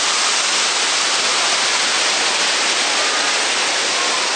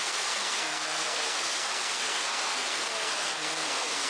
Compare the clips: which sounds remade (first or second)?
second